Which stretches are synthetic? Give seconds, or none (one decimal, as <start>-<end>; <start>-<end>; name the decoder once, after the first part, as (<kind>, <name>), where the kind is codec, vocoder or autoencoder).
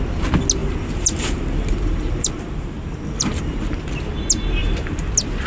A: 0.6-3.9 (vocoder, BigVGAN v2); 4.6-5.1